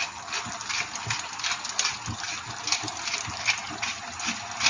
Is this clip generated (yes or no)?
no